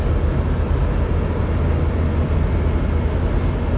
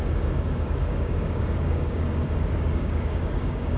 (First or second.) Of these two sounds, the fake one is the second